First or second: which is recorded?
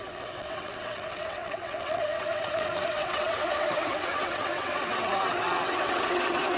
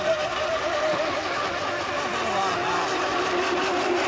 second